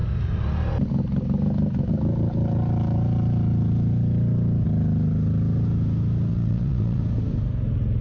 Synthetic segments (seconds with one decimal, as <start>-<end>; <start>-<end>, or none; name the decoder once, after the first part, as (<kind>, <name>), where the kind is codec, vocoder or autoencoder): 6.3-7.0 (vocoder, WaveNeXt)